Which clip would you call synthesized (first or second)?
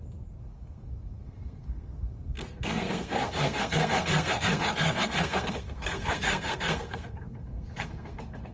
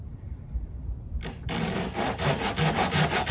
first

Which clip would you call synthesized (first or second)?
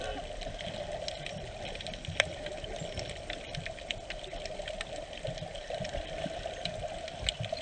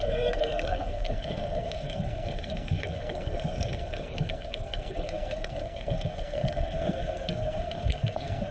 second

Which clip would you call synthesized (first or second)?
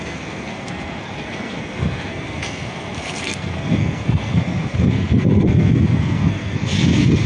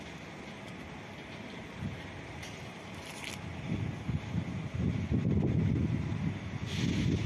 first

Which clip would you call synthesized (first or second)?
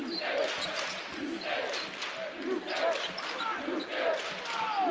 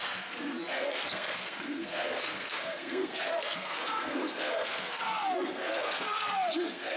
second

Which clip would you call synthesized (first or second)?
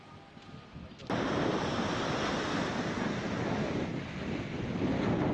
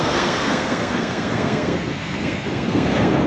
second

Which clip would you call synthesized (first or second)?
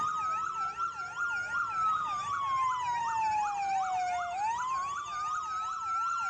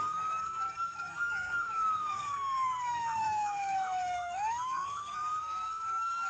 second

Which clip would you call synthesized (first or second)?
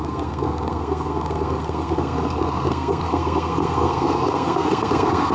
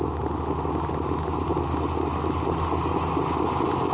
first